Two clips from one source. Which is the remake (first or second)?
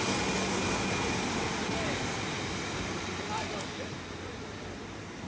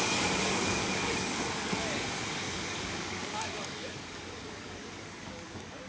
second